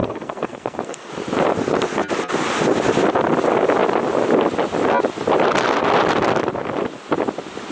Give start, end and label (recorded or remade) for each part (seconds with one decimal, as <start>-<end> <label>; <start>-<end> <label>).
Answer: 0.0-1.1 remade; 1.1-7.7 recorded